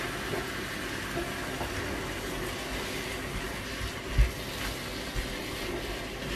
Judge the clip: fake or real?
real